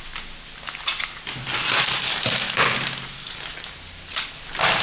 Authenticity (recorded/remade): recorded